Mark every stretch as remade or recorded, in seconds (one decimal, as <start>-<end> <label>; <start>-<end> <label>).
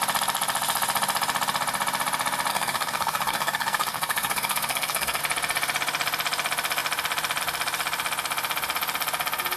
0.0-2.5 recorded; 2.5-5.2 remade; 5.2-9.6 recorded